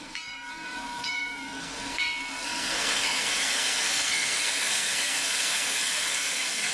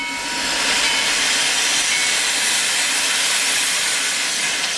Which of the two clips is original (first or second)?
second